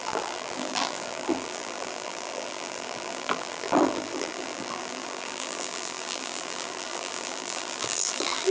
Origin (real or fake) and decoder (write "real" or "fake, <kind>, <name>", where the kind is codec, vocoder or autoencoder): fake, vocoder, BigVGAN v2